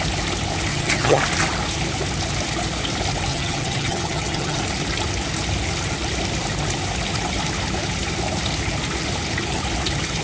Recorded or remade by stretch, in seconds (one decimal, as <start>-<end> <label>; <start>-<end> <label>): 0.0-0.7 recorded; 0.7-1.2 remade; 1.2-3.3 recorded; 3.3-4.6 remade; 4.6-10.2 recorded